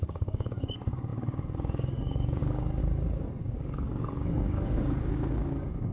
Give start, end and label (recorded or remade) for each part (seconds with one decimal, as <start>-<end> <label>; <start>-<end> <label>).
0.0-2.8 remade; 2.8-3.4 recorded; 3.4-5.9 remade